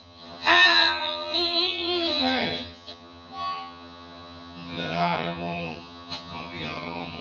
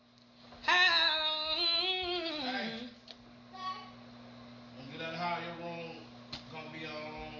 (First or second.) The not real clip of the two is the first